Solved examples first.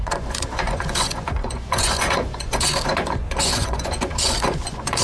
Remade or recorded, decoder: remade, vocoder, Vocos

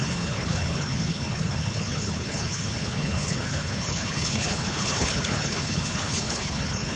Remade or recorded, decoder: remade, codec, HILCodec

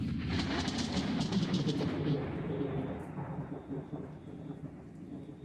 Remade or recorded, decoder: recorded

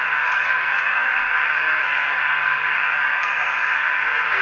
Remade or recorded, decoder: remade, codec, SNAC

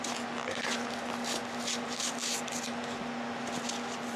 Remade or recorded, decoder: recorded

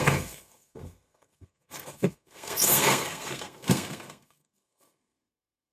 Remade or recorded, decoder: remade, codec, SNAC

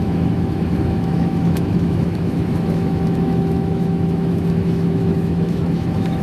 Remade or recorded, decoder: remade, autoencoder, DAC-VAE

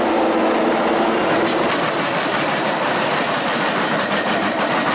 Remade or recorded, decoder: recorded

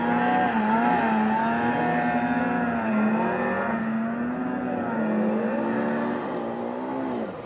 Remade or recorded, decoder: recorded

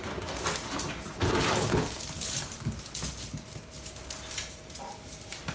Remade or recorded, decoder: recorded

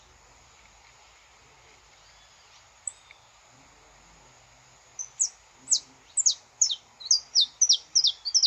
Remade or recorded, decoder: recorded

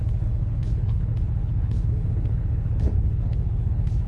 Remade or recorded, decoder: remade, codec, HILCodec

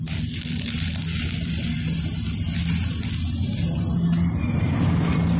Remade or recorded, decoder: recorded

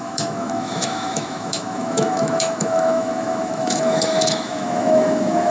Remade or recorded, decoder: remade, autoencoder, DAC-VAE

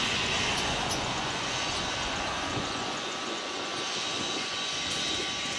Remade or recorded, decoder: remade, vocoder, Vocos